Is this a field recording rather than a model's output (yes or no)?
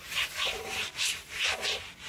yes